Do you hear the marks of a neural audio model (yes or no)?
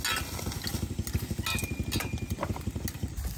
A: no